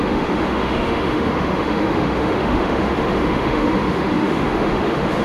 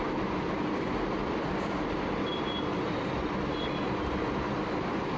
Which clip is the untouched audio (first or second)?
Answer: second